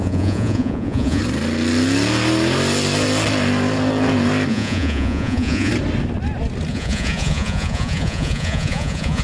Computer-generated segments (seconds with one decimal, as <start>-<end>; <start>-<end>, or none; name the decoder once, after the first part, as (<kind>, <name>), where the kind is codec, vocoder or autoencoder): 0.0-1.2 (vocoder, Vocos); 4.5-5.7; 6.7-9.2